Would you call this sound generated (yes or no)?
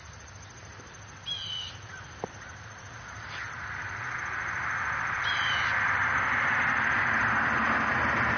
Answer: yes